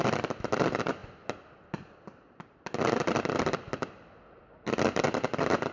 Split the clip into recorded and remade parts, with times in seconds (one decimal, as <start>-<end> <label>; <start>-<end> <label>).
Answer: 0.0-5.7 recorded